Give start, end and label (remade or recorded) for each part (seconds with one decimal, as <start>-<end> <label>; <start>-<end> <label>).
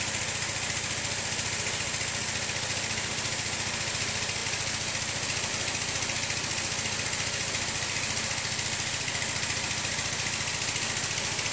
0.0-11.5 recorded